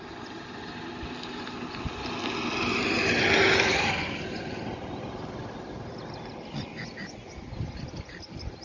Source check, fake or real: real